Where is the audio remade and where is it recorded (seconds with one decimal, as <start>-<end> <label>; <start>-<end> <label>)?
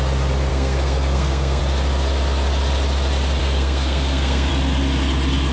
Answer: 0.0-0.5 recorded; 0.5-1.6 remade; 1.6-3.4 recorded; 3.4-4.5 remade; 4.5-5.5 recorded